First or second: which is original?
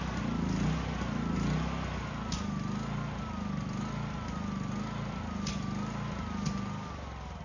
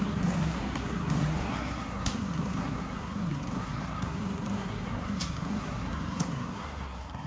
first